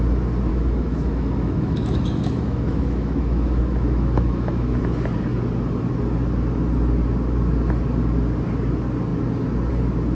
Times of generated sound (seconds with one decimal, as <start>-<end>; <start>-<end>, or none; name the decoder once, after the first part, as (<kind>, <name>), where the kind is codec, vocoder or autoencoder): 0.5-4.8 (autoencoder, DAC-VAE)